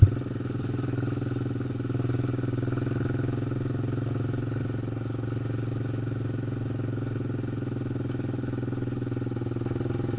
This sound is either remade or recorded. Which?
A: recorded